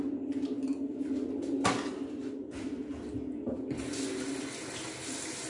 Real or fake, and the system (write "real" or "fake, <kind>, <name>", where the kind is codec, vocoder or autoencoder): real